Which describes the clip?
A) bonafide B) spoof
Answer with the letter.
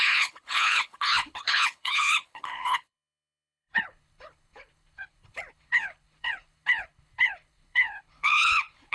B